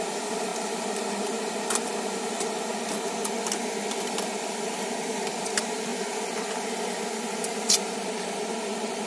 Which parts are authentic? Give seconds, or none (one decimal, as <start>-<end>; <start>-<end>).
0.5-4.1